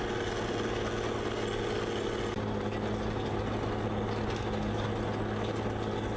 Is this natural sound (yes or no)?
yes